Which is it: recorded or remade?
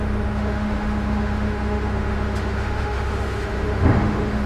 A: remade